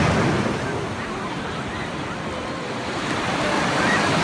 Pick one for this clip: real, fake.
real